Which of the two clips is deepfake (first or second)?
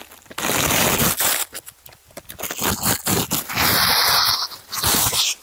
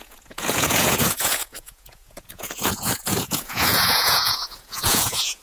second